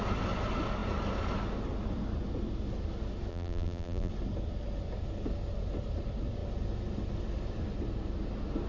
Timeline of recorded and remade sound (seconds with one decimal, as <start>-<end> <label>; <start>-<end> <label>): 0.0-3.3 recorded; 3.3-4.1 remade; 4.1-8.7 recorded

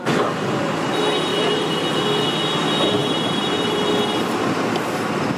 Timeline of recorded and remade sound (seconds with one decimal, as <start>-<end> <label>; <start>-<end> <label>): 0.0-1.3 recorded; 1.3-1.8 remade; 1.8-3.0 recorded; 3.0-3.8 remade; 3.8-5.4 recorded

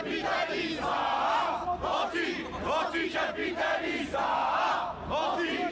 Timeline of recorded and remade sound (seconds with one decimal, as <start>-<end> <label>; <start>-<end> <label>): 0.0-5.7 recorded

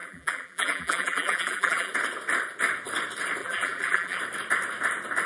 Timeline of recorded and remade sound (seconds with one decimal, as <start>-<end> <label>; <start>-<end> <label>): 0.0-1.9 remade; 1.9-3.4 recorded; 3.4-4.2 remade; 4.2-5.3 recorded

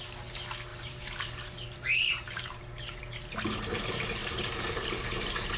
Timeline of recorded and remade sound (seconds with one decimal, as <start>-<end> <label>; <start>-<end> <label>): 0.0-0.7 recorded; 0.7-3.0 remade; 3.0-4.2 recorded; 4.2-5.6 remade

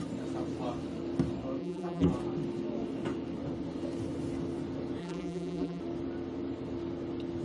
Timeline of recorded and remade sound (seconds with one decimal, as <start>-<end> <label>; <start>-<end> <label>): 0.0-1.6 recorded; 1.6-2.1 remade; 2.1-5.0 recorded; 5.0-5.8 remade; 5.8-7.4 recorded

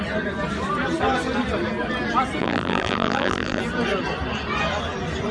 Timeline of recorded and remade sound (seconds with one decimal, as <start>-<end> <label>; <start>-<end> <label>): 0.0-2.4 recorded; 2.4-3.6 remade; 3.6-5.3 recorded

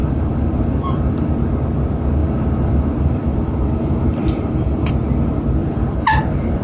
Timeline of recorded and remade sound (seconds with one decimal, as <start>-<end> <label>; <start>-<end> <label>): 0.0-1.3 remade; 1.3-2.2 recorded; 2.2-4.9 remade; 4.9-5.6 recorded; 5.6-6.6 remade